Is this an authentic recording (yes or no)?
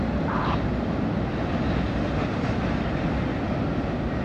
yes